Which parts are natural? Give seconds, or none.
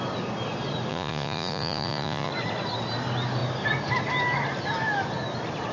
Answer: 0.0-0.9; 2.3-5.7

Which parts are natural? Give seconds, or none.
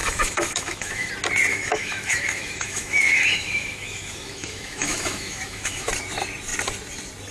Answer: 1.1-1.5; 5.9-7.3